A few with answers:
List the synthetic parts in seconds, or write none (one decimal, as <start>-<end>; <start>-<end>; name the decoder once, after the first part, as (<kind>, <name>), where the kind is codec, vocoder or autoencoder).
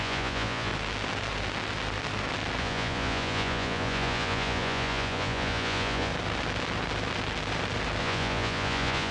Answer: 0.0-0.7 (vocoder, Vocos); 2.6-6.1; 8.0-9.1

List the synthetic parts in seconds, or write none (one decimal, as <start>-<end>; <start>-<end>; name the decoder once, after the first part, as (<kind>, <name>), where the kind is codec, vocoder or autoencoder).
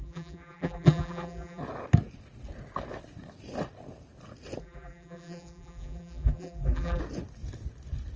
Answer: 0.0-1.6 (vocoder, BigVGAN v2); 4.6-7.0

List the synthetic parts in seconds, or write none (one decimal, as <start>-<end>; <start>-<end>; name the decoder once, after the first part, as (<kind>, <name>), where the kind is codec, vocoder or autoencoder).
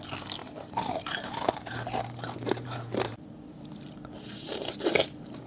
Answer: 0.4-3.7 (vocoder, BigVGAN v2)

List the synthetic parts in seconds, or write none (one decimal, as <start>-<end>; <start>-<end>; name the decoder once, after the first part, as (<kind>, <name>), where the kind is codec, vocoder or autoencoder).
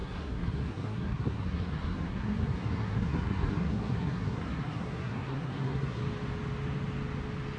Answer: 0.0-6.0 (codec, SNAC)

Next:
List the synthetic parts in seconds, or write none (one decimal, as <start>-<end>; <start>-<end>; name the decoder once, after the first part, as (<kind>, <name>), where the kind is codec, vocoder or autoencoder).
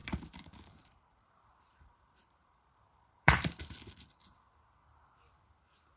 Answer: 0.0-3.6 (vocoder, BigVGAN v2)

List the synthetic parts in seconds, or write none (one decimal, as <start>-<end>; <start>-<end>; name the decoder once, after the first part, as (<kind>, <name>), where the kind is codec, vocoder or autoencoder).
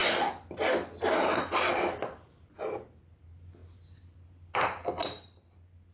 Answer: none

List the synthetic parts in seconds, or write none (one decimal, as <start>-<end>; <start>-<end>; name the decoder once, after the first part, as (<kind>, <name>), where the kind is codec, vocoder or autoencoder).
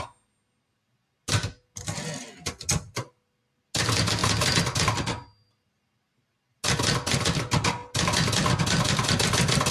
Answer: none